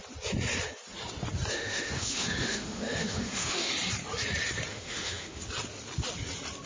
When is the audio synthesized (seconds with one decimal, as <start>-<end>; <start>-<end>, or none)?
1.5-3.7; 4.7-5.4